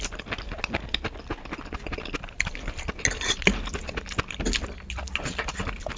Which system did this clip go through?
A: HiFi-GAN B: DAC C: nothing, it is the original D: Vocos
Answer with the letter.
C